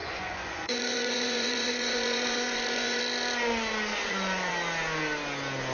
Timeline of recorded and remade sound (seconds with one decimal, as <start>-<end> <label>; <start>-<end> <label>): 0.0-3.0 remade; 3.0-3.9 recorded; 3.9-4.5 remade; 4.5-5.7 recorded